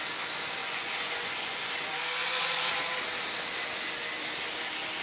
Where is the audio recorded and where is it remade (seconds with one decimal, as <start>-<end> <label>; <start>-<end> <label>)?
0.0-0.6 recorded; 0.6-1.7 remade; 1.7-2.2 recorded; 2.2-2.7 remade; 2.7-5.0 recorded